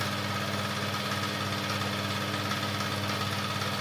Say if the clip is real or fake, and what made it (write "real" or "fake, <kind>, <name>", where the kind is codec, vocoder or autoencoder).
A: real